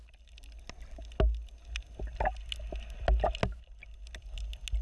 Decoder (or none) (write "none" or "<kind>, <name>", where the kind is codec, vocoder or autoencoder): none